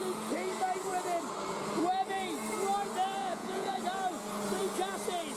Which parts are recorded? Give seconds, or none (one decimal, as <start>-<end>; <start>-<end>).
0.0-3.2; 3.8-5.4

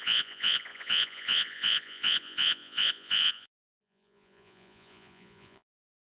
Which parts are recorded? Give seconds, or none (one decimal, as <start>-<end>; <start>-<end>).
none

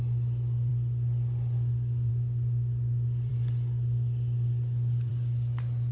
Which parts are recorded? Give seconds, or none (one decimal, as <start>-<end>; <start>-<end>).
0.0-5.9